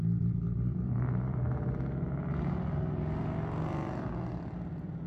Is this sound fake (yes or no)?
no